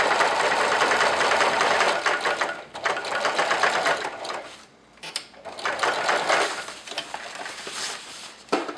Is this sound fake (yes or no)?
no